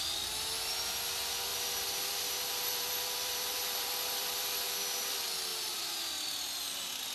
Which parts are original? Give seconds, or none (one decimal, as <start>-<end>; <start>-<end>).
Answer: 0.0-1.5; 4.7-5.5; 6.1-7.1